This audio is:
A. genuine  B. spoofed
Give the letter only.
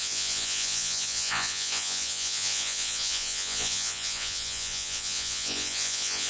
B